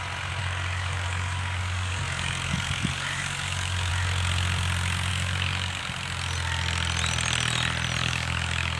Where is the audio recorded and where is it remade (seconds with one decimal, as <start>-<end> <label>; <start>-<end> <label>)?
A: 0.0-0.4 recorded; 0.4-3.9 remade; 3.9-5.1 recorded; 5.1-5.8 remade; 5.8-8.0 recorded; 8.0-8.8 remade